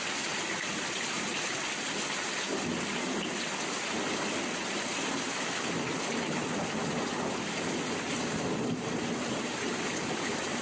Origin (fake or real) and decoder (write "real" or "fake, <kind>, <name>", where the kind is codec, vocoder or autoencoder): real